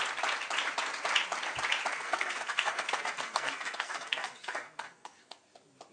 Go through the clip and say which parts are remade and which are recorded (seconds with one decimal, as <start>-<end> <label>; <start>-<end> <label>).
0.0-1.9 recorded; 1.9-5.4 remade; 5.4-5.9 recorded